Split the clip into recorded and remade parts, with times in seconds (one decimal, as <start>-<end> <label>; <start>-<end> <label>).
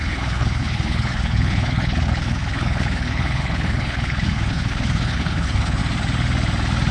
0.0-5.8 remade; 5.8-6.9 recorded